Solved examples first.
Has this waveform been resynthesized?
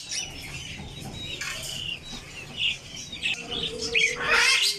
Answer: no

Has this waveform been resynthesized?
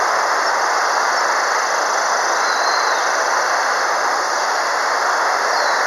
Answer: no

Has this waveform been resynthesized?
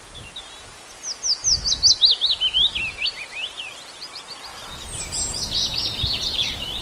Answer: no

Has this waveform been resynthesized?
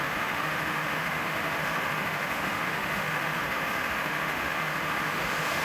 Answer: yes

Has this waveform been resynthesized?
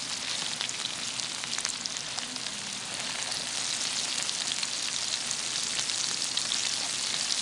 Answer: no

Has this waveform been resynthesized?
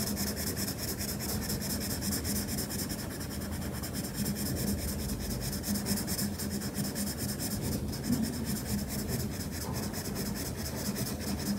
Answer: no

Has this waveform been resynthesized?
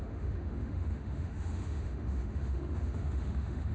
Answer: yes